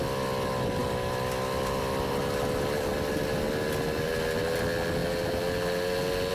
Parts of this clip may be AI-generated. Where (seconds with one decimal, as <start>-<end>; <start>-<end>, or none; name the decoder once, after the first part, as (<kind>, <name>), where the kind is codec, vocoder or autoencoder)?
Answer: none